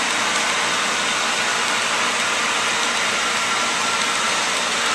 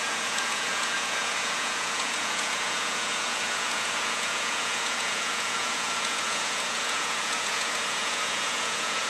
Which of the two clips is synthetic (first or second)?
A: second